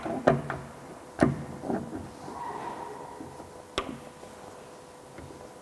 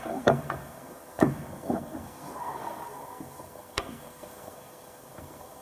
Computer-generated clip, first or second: second